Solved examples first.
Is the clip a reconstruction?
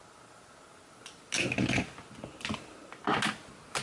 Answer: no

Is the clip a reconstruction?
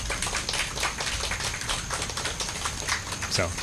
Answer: no